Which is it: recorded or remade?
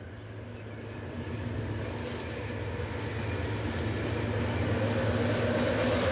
recorded